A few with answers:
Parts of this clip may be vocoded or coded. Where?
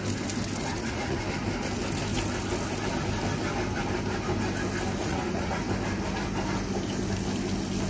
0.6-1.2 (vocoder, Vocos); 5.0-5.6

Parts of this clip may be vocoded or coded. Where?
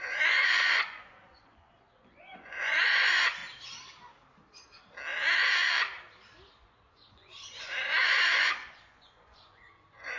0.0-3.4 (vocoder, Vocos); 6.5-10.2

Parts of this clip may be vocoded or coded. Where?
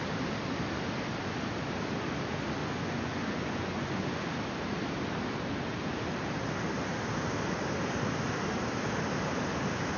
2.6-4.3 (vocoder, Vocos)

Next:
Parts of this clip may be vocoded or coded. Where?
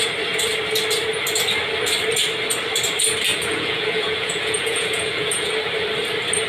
3.3-5.5 (vocoder, Vocos)